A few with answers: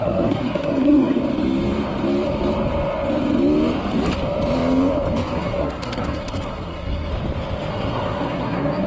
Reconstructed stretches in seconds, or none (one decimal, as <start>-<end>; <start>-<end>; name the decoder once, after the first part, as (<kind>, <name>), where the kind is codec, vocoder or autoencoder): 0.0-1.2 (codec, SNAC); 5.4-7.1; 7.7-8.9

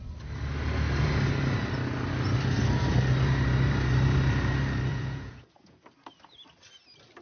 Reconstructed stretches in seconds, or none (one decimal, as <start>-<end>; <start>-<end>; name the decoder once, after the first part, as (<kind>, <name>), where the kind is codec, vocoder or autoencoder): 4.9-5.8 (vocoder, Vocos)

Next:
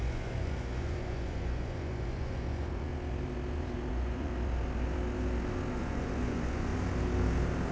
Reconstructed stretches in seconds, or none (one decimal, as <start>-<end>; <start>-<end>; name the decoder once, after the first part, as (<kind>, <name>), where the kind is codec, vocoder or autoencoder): 0.0-2.9 (vocoder, Vocos); 3.9-4.3; 5.8-6.7

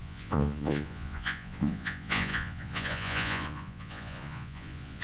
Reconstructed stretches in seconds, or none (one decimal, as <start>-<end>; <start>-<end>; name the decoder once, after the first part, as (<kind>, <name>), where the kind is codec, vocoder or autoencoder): 0.0-5.0 (vocoder, Vocos)

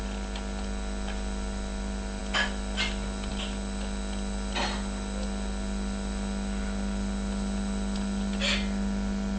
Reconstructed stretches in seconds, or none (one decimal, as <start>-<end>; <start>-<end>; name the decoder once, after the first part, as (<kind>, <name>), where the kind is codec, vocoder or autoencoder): none

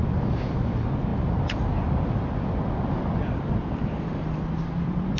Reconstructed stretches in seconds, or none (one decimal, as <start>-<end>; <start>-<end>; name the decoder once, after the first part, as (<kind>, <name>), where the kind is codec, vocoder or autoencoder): none